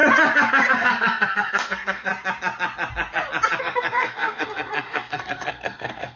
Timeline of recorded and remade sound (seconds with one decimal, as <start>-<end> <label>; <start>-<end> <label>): 0.0-0.7 recorded; 0.7-2.1 remade; 2.1-3.6 recorded; 3.6-6.2 remade